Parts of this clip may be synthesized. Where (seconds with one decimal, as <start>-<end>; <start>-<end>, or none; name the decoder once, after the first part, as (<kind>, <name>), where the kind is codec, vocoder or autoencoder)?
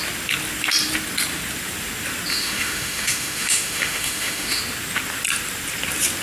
2.3-4.6 (autoencoder, DAC-VAE)